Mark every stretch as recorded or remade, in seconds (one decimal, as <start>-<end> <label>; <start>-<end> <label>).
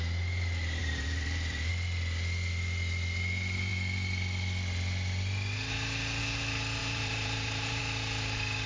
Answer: 0.0-0.8 recorded; 0.8-1.7 remade; 1.7-6.8 recorded; 6.8-7.8 remade; 7.8-8.7 recorded